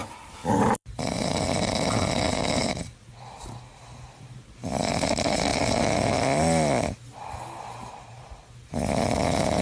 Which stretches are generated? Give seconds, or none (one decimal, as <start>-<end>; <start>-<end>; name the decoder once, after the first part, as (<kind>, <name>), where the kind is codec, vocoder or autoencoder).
0.0-1.0 (vocoder, BigVGAN v2)

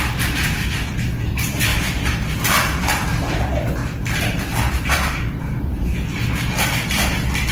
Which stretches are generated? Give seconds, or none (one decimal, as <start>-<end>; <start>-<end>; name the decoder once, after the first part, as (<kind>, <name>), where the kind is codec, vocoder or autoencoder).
0.0-1.7 (vocoder, BigVGAN v2); 2.8-3.8; 4.7-5.9

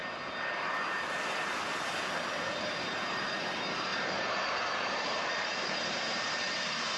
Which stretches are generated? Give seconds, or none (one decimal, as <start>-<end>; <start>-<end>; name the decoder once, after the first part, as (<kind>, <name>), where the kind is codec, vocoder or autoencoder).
3.9-7.0 (vocoder, BigVGAN v2)